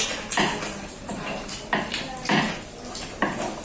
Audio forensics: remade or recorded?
recorded